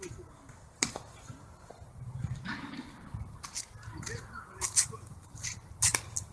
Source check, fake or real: fake